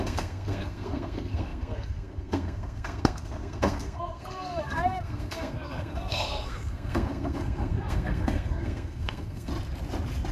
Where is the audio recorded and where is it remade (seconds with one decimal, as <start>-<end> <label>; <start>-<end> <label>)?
0.0-9.5 remade; 9.5-10.3 recorded